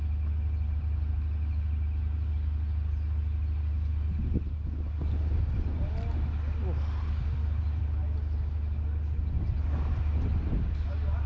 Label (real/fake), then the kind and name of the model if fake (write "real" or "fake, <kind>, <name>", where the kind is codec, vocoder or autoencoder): real